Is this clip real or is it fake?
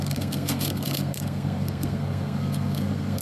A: fake